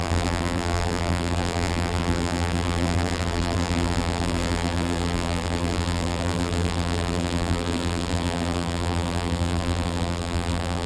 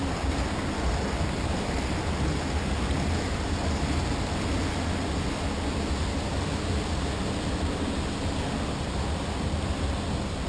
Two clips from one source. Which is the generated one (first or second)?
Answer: first